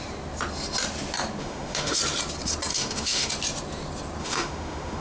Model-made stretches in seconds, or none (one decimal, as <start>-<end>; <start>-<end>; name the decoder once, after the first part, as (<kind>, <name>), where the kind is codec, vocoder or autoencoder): 1.4-2.0 (autoencoder, DAC-VAE); 2.7-3.3; 4.2-5.0